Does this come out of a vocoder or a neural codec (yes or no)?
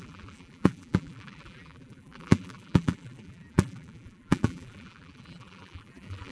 yes